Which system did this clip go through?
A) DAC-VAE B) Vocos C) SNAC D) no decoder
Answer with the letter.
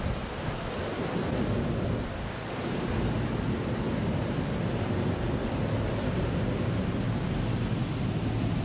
D